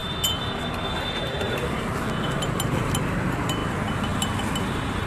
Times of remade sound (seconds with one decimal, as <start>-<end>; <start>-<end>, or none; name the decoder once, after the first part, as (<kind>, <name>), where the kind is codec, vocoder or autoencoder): 2.2-3.6 (vocoder, BigVGAN v2)